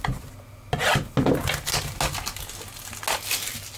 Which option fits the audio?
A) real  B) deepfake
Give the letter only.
A